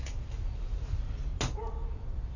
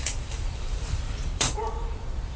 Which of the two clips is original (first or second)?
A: first